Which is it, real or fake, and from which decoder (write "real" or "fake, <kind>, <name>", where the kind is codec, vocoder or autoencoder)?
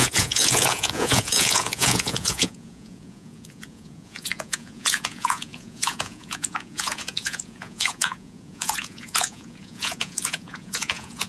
fake, vocoder, Vocos